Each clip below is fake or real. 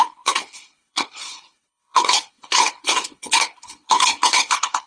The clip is fake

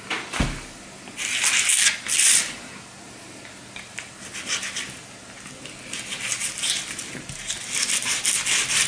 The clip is real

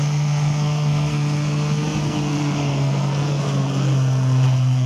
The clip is fake